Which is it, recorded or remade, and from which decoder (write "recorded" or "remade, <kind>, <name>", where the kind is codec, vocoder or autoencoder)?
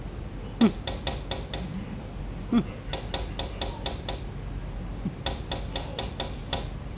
recorded